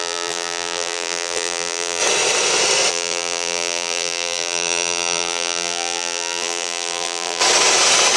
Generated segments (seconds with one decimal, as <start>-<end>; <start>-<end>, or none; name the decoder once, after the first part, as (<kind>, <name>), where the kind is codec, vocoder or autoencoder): 0.0-2.0 (vocoder, BigVGAN v2); 2.9-7.4